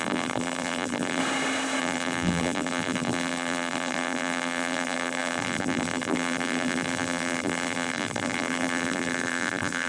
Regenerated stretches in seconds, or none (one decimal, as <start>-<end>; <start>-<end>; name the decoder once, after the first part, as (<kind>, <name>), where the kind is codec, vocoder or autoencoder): 0.0-1.2 (vocoder, BigVGAN v2); 1.8-9.9